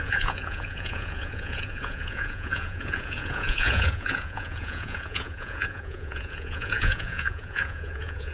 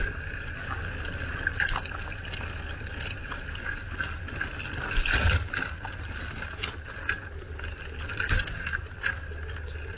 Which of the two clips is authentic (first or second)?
second